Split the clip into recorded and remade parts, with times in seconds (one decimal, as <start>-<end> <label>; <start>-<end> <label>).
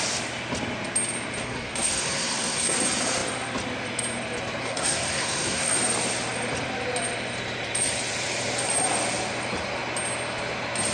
0.0-1.4 recorded; 1.4-2.8 remade; 2.8-4.6 recorded; 4.6-5.7 remade; 5.7-10.9 recorded